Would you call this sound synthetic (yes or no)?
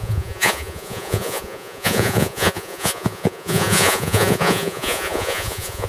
yes